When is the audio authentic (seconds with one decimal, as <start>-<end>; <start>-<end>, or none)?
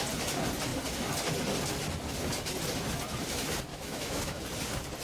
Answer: 0.0-3.7; 4.4-5.0